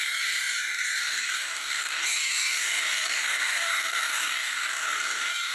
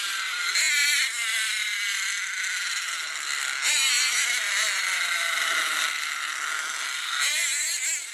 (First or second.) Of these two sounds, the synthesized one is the first